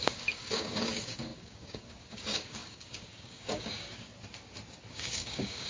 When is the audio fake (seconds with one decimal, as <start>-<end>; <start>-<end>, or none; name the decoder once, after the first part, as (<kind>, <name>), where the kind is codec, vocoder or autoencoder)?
0.0-4.1 (codec, DAC); 4.9-5.7